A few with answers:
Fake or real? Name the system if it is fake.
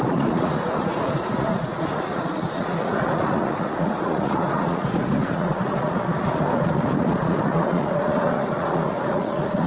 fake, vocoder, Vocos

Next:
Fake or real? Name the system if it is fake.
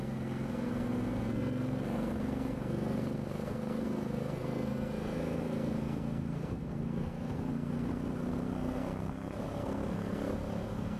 fake, codec, SNAC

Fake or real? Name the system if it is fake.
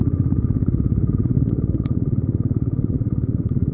fake, vocoder, Vocos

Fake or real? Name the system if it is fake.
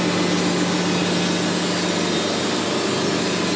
real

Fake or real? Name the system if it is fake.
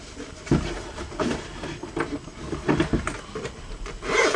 real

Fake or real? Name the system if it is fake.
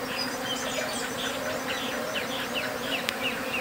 fake, vocoder, BigVGAN v2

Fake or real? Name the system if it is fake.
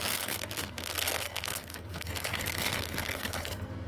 fake, codec, SNAC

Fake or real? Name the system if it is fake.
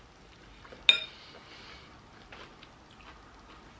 real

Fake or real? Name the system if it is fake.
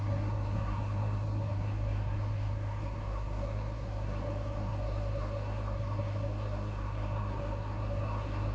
fake, codec, SNAC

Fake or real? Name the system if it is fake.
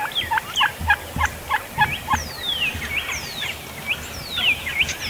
real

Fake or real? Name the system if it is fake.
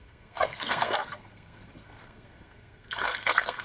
fake, codec, SNAC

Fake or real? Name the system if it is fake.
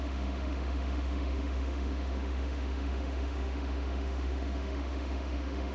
fake, autoencoder, DAC-VAE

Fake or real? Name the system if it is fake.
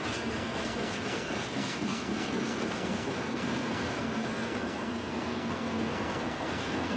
fake, codec, SNAC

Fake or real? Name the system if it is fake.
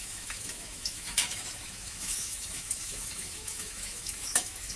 fake, autoencoder, DAC-VAE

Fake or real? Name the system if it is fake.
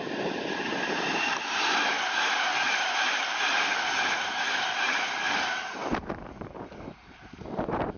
fake, vocoder, BigVGAN v2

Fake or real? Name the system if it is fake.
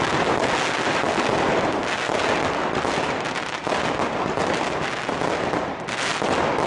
real